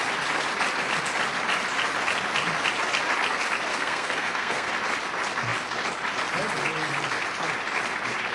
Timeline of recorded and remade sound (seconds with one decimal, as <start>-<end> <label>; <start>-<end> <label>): 0.0-3.7 recorded; 3.7-4.7 remade; 4.7-8.3 recorded